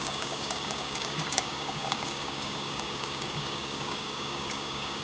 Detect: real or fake fake